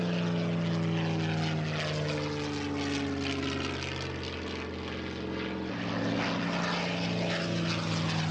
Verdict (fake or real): real